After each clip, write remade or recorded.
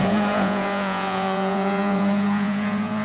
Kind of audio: remade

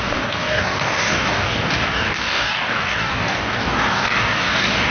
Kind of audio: remade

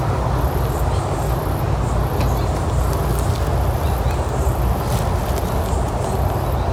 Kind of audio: recorded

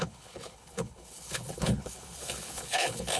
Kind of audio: remade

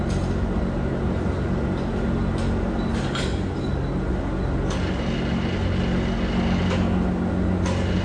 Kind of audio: recorded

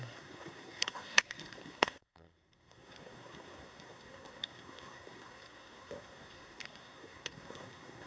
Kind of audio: remade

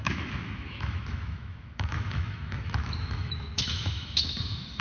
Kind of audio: remade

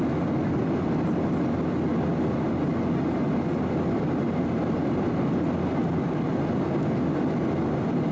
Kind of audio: recorded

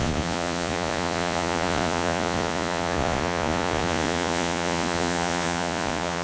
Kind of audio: remade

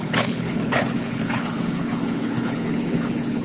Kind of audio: remade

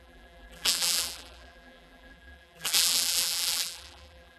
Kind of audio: remade